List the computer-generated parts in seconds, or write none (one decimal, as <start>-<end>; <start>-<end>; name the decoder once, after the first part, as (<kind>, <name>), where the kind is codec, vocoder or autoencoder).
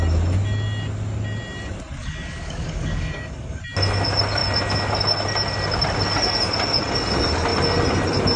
2.0-3.6 (codec, DAC)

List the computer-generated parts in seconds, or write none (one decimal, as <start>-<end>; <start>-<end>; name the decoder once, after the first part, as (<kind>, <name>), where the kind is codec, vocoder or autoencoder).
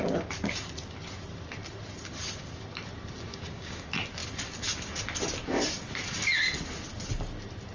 3.3-3.8 (codec, DAC)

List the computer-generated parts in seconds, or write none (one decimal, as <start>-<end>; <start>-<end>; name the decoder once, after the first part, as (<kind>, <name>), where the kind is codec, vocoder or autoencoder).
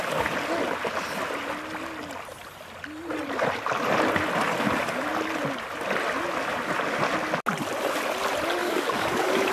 8.6-9.5 (codec, DAC)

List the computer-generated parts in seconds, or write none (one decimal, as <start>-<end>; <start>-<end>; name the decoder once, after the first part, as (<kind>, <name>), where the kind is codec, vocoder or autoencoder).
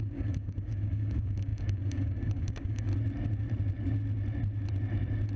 0.0-2.9 (codec, DAC)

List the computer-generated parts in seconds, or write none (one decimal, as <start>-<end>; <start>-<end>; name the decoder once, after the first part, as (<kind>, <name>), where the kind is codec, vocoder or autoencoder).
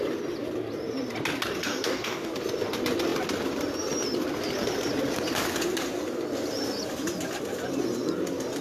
1.6-2.3 (codec, DAC)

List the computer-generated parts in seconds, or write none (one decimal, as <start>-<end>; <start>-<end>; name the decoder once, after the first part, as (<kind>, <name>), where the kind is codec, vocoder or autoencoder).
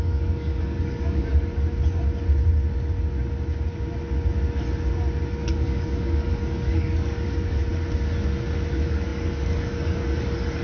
0.0-1.3 (codec, DAC); 5.3-7.7; 8.7-10.6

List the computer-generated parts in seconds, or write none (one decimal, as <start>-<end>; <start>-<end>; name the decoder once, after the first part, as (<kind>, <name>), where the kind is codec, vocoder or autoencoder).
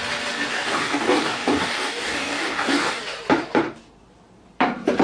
0.5-3.0 (codec, DAC)